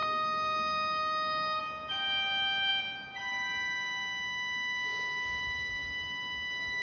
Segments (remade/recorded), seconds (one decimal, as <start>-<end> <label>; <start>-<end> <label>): 0.0-1.6 remade; 1.6-6.8 recorded